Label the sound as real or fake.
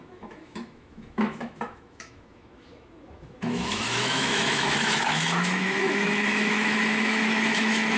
fake